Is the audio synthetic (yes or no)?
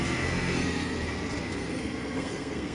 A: yes